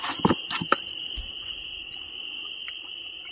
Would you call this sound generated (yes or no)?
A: no